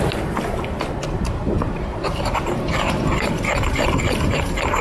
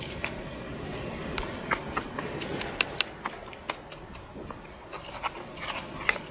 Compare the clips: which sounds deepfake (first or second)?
first